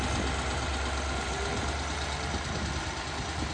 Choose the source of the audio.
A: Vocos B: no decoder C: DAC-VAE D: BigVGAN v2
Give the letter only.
B